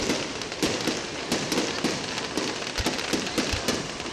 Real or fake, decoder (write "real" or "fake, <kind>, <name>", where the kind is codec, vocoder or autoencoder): real